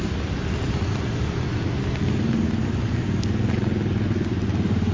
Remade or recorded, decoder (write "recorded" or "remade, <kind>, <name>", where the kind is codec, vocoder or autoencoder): recorded